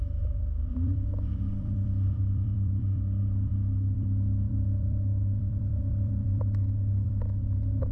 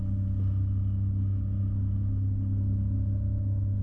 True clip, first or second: second